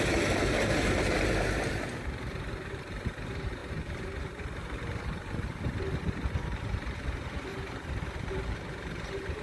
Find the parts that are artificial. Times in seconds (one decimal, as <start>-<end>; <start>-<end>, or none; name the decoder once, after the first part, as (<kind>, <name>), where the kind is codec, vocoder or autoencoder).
0.0-7.5 (vocoder, BigVGAN v2); 8.3-9.4